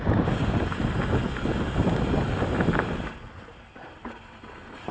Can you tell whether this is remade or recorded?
recorded